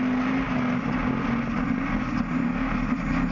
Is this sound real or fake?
real